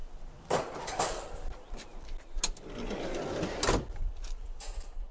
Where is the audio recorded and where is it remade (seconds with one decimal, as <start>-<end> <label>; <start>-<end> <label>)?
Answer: 0.0-0.5 recorded; 0.5-1.9 remade; 1.9-5.1 recorded